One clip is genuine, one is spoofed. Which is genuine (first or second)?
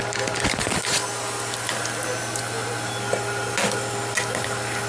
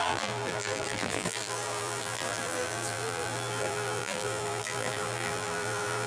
first